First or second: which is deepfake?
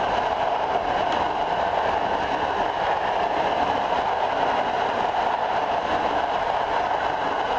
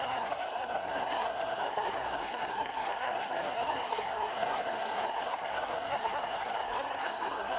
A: second